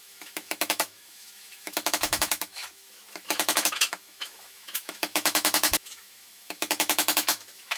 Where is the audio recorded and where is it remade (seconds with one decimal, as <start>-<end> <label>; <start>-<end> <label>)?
0.0-7.8 remade